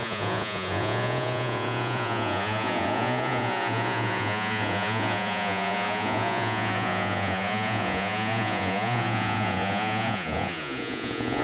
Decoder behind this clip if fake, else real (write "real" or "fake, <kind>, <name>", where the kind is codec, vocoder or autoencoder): fake, vocoder, Vocos